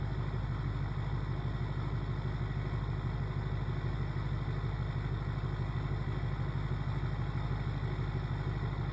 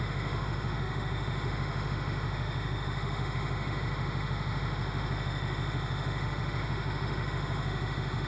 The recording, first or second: first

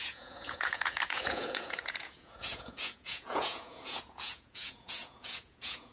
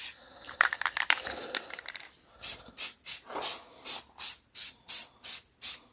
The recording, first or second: second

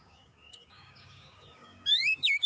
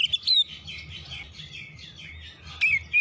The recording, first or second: second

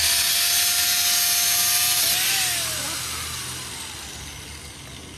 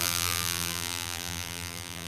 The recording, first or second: first